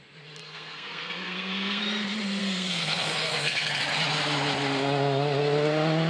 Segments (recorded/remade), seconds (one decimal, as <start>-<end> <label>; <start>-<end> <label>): 0.0-0.4 recorded; 0.4-1.8 remade; 1.8-2.4 recorded; 2.4-3.8 remade; 3.8-6.1 recorded